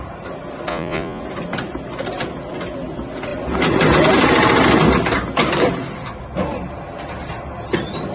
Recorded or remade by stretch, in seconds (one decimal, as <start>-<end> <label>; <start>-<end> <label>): 0.0-0.7 recorded; 0.7-1.2 remade; 1.2-8.1 recorded